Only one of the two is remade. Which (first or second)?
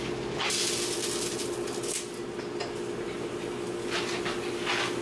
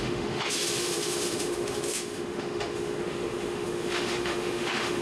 second